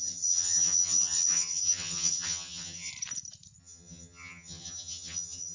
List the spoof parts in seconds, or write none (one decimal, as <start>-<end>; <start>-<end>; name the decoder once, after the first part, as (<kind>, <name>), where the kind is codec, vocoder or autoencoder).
0.0-2.9 (vocoder, HiFi-GAN); 3.6-5.5